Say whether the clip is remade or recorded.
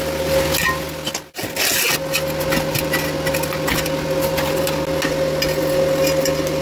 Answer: recorded